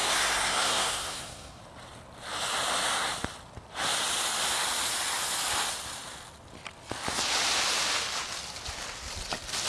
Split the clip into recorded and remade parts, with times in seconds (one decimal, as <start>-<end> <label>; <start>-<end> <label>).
0.0-1.6 remade; 1.6-9.7 recorded